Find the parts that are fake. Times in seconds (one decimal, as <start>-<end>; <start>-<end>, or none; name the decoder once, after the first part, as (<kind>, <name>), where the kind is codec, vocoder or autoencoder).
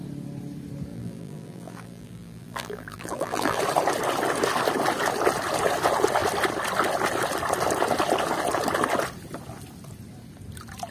0.9-3.6 (vocoder, BigVGAN v2)